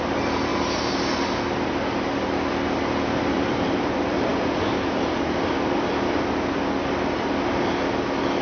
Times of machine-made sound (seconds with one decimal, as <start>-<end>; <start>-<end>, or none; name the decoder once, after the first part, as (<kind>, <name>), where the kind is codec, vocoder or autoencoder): none